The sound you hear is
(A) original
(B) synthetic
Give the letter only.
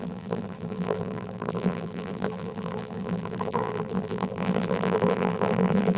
B